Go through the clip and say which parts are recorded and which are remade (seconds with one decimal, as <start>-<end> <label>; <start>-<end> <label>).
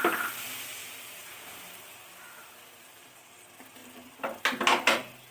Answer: 0.0-3.8 recorded; 3.8-4.4 remade; 4.4-5.3 recorded